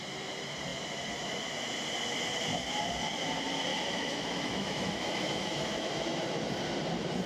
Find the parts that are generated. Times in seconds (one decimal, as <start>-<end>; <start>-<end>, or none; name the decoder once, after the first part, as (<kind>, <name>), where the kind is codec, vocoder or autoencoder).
3.7-6.2 (autoencoder, DAC-VAE)